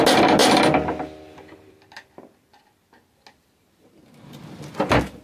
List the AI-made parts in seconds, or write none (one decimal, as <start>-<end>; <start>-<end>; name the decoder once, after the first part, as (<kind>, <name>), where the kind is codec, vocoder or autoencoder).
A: none